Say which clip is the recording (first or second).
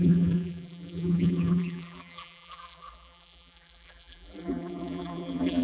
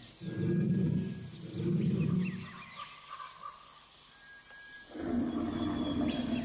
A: second